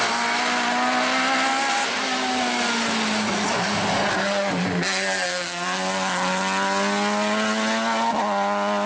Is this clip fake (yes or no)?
no